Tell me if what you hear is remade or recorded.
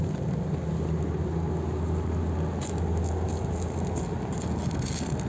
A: recorded